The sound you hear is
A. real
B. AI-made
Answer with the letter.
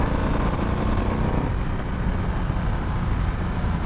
A